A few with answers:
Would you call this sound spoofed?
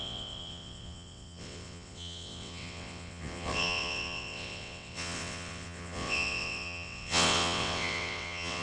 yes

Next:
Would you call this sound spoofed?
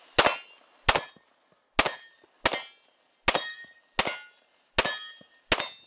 no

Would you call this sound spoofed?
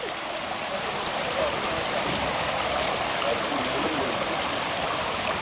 yes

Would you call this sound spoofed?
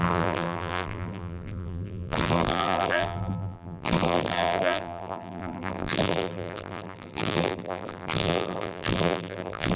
yes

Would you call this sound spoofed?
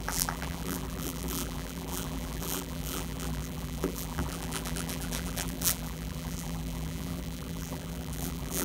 yes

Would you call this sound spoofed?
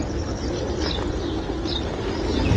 no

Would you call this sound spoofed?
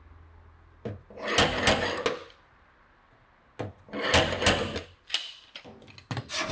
no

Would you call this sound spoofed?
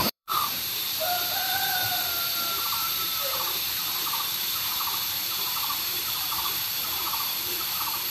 yes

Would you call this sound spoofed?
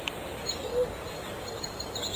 no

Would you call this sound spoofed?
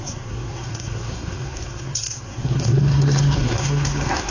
yes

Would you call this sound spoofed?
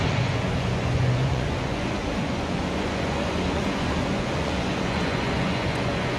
yes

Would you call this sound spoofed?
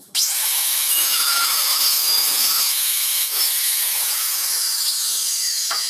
yes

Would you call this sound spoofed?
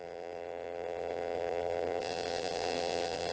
yes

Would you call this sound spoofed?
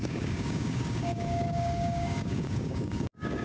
yes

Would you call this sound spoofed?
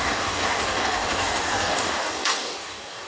yes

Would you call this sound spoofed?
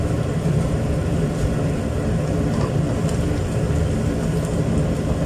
no